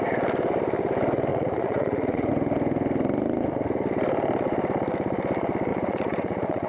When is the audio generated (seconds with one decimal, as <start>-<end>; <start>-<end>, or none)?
1.3-2.3; 5.7-6.7